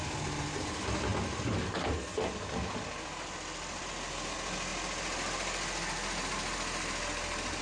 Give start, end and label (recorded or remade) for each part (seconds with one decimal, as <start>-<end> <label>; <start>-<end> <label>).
0.0-7.6 recorded